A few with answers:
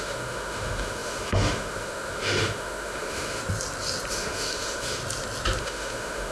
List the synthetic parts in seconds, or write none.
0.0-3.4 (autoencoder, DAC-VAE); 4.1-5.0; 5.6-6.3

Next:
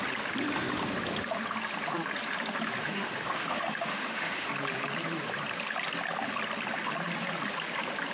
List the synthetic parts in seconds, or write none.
2.8-4.5 (autoencoder, DAC-VAE)

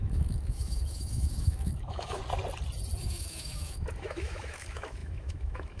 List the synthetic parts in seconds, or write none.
0.0-2.2 (autoencoder, DAC-VAE); 3.0-5.8